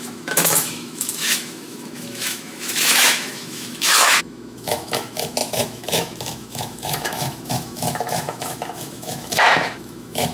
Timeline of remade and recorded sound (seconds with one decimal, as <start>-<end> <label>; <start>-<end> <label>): 0.0-10.3 remade